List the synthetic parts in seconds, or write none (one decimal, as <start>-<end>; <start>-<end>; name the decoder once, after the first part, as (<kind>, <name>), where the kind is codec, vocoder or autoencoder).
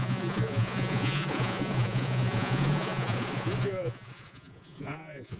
0.0-5.4 (vocoder, Vocos)